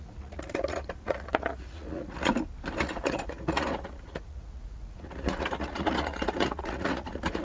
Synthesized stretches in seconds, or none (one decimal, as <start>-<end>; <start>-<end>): 0.0-2.3; 2.8-7.4